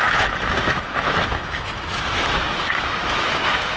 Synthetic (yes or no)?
yes